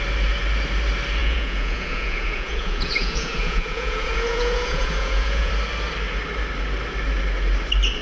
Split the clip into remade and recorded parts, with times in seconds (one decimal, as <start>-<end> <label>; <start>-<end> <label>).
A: 0.0-1.2 recorded; 1.2-5.5 remade; 5.5-8.0 recorded